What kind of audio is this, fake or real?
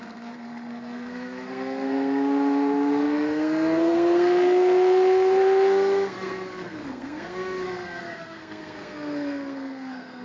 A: fake